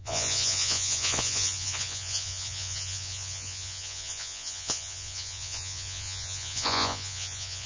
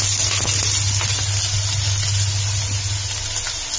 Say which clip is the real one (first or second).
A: second